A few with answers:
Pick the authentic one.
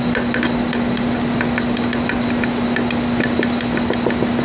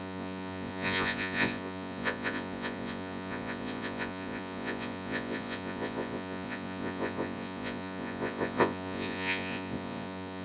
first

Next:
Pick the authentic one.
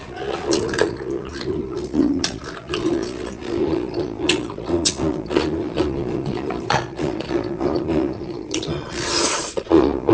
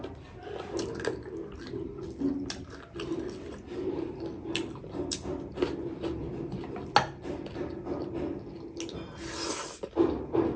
second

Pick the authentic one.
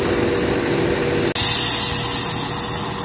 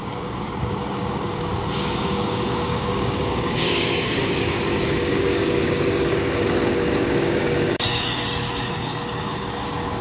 first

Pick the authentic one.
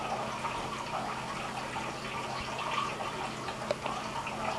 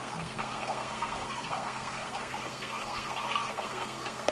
first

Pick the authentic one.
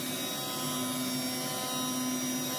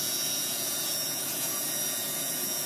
first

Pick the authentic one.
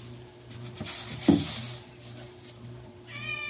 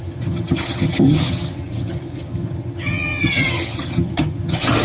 first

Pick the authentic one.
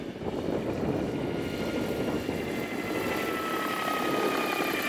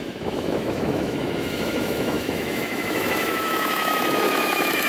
first